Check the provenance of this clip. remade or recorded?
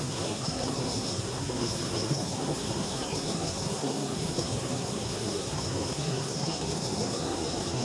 remade